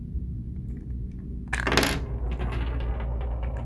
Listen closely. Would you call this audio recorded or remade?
recorded